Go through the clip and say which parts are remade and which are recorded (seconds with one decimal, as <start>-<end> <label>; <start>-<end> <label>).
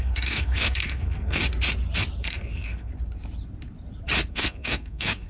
0.0-1.4 remade; 1.4-2.2 recorded; 2.2-2.9 remade; 2.9-4.3 recorded; 4.3-5.3 remade